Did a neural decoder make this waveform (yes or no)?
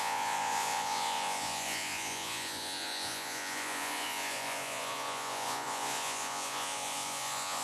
yes